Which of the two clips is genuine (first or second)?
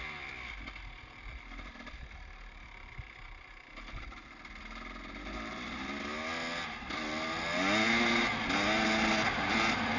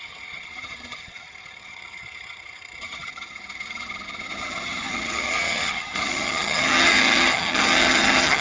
first